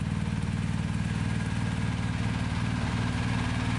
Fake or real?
real